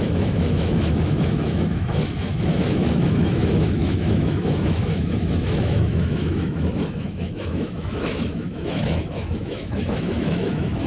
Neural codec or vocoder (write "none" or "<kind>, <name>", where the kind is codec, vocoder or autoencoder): autoencoder, DAC-VAE